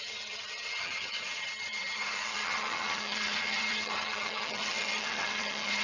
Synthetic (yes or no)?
yes